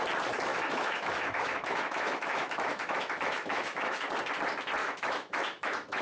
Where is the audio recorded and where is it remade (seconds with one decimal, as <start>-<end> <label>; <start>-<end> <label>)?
0.0-0.5 recorded; 0.5-4.1 remade; 4.1-4.8 recorded; 4.8-6.0 remade